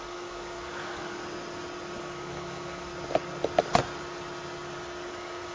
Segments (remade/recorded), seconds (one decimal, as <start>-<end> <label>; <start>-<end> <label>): 0.0-1.2 remade; 1.2-2.0 recorded; 2.0-2.9 remade; 2.9-5.1 recorded; 5.1-5.5 remade